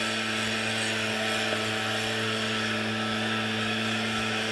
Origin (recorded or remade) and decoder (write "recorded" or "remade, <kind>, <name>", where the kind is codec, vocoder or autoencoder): recorded